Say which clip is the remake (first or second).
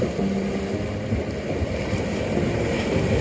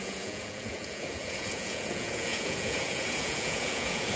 second